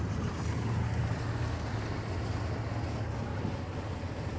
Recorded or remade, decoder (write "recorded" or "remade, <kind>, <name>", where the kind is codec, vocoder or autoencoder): recorded